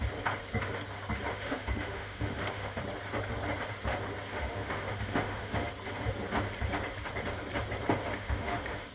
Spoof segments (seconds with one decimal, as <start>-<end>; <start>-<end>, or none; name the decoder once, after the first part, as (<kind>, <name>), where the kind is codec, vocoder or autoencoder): 1.3-2.8 (autoencoder, DAC-VAE); 4.3-5.7; 8.1-8.9